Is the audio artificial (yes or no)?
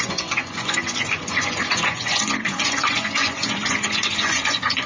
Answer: yes